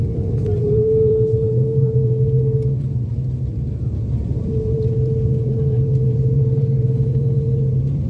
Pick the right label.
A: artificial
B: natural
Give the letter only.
A